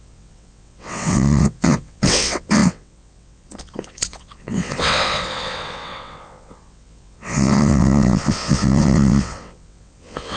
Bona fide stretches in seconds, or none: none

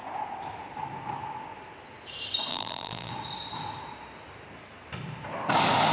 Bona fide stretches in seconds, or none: 0.0-2.5; 3.1-5.9